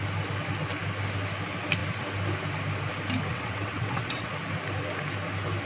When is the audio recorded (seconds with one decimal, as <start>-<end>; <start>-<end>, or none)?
0.0-3.3; 4.3-5.7

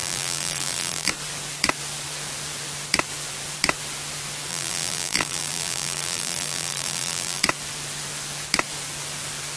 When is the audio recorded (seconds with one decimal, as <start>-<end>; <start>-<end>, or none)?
1.1-4.5; 7.4-9.6

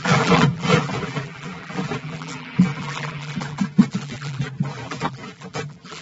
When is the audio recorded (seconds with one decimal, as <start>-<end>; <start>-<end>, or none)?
none

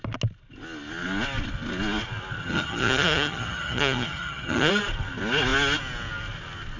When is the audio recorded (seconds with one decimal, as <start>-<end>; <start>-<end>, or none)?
0.0-2.4; 4.7-6.8

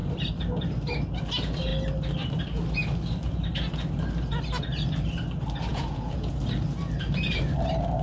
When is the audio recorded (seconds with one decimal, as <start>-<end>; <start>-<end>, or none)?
0.0-5.7; 6.3-8.0